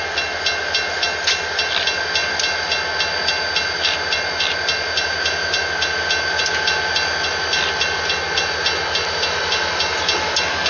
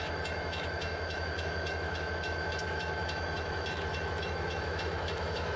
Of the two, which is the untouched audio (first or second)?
first